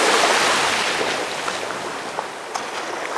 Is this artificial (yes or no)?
no